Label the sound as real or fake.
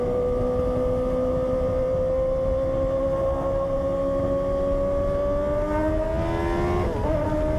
real